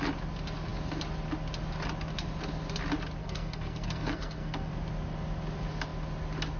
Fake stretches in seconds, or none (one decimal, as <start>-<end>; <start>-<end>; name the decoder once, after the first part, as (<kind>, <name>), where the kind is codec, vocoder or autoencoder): 3.2-4.7 (codec, SNAC)